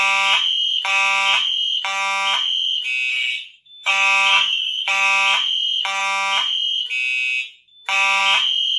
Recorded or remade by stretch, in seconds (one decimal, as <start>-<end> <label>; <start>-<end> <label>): 0.0-3.1 recorded; 3.1-3.9 remade; 3.9-4.3 recorded; 4.3-4.9 remade; 4.9-8.8 recorded